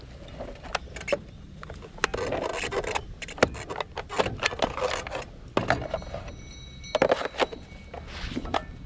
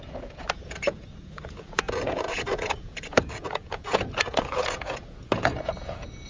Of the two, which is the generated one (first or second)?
second